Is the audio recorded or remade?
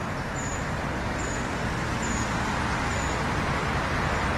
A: recorded